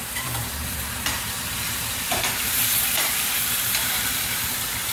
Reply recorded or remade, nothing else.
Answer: remade